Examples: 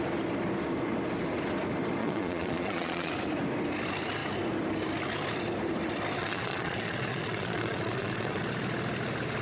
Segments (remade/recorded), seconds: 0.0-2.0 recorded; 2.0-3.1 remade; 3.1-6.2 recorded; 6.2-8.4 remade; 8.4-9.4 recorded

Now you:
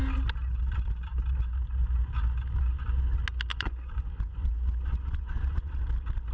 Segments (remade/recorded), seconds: 0.0-3.5 recorded; 3.5-5.8 remade; 5.8-6.3 recorded

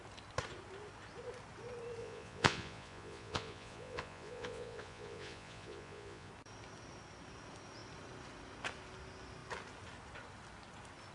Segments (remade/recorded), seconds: 0.0-2.0 recorded; 2.0-6.3 remade; 6.3-11.1 recorded